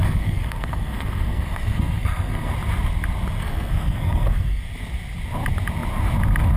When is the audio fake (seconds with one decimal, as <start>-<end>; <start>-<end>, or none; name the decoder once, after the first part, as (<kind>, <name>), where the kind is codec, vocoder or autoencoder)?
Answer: 0.0-2.5 (codec, SNAC); 3.4-4.6

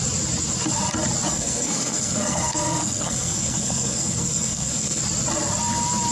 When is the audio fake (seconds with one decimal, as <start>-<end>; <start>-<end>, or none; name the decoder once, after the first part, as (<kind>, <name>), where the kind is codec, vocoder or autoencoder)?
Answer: 1.3-5.0 (codec, SNAC)

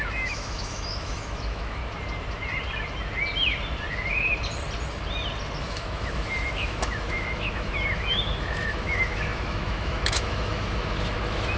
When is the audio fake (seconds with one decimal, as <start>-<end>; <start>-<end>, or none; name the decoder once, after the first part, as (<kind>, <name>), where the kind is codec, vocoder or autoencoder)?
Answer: 0.0-1.8 (autoencoder, DAC-VAE); 5.6-11.6

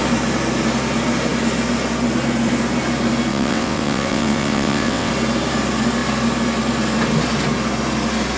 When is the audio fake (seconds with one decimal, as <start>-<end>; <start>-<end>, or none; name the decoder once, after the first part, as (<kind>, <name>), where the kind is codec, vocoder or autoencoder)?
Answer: 3.3-5.1 (vocoder, WaveNeXt)

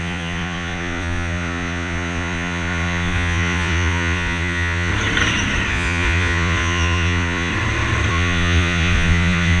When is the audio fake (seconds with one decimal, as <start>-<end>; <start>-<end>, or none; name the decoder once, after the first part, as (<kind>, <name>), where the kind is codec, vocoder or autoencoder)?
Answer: 0.0-4.9 (vocoder, Vocos); 5.7-7.5; 8.1-9.6

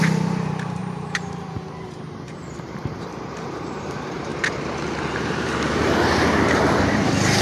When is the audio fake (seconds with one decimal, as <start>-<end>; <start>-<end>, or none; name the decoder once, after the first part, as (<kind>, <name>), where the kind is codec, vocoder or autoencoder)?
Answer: 0.0-4.3 (vocoder, BigVGAN v2); 5.1-7.4